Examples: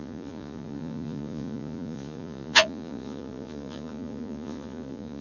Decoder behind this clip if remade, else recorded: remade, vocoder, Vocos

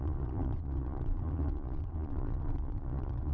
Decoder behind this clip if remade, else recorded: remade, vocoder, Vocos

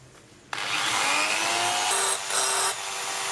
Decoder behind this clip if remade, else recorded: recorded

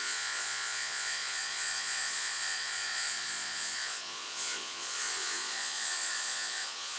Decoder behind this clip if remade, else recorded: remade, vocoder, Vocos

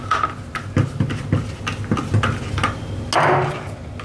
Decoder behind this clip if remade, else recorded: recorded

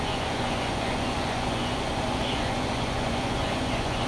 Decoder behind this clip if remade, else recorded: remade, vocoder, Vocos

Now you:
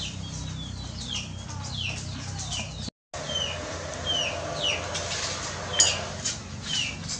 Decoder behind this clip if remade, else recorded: recorded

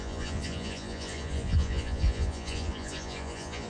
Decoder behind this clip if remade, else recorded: remade, vocoder, Vocos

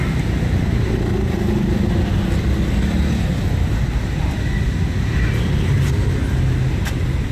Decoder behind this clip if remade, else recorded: recorded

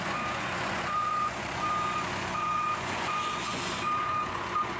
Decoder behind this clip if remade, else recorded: remade, vocoder, Vocos